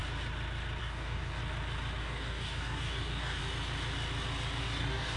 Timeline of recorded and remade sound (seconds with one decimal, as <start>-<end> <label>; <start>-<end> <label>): 0.0-0.8 recorded; 0.8-1.4 remade; 1.4-2.0 recorded; 2.0-3.4 remade; 3.4-4.6 recorded; 4.6-5.2 remade